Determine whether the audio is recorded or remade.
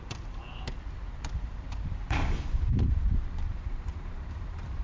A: remade